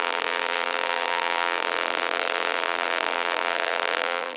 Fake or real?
fake